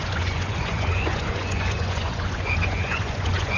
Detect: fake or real fake